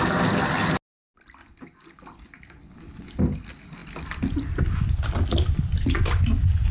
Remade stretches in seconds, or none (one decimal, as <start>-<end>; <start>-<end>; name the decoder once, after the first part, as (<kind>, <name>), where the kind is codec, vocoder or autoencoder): none